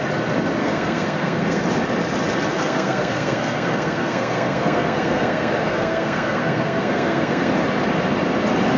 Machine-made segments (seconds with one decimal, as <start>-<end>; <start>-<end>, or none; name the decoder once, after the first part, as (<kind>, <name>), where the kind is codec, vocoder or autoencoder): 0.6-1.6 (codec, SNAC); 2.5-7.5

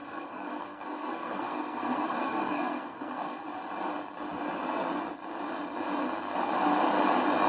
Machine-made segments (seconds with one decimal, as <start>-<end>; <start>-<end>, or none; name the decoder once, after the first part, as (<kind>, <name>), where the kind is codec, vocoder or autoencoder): 0.0-3.4 (codec, SNAC)

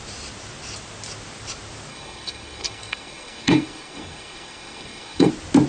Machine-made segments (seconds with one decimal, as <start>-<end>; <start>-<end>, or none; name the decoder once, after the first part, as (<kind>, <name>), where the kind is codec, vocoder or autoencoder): 1.9-5.3 (codec, SNAC)

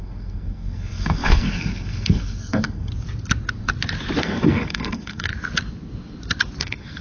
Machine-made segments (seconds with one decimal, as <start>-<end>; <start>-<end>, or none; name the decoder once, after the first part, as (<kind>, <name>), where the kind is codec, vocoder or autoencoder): 0.0-2.9 (codec, SNAC); 4.2-5.3; 6.6-7.0

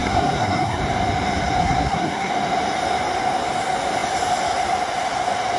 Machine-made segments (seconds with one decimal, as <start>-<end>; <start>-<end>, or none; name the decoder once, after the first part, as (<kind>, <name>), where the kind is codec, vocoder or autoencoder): 0.0-0.8 (codec, SNAC); 1.6-2.3

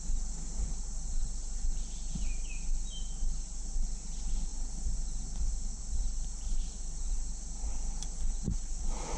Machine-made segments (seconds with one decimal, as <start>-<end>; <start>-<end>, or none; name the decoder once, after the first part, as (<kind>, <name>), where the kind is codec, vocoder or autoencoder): none

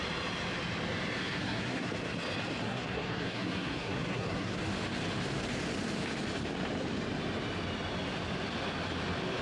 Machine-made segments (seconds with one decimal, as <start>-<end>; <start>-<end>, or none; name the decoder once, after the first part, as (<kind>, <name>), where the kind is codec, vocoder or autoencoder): 1.2-1.9 (codec, SNAC); 2.6-4.6

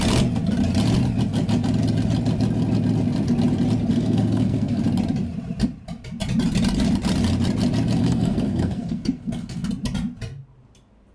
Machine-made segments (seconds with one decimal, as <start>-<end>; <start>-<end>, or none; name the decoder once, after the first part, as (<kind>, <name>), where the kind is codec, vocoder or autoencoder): 3.9-4.8 (codec, SNAC); 8.0-9.7